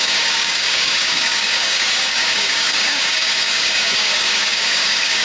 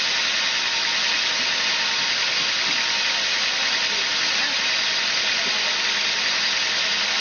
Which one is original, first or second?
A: second